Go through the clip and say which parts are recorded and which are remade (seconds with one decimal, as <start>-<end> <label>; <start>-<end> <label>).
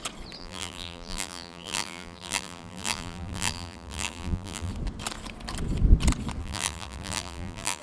0.0-0.4 recorded; 0.4-4.7 remade; 4.7-6.4 recorded; 6.4-7.8 remade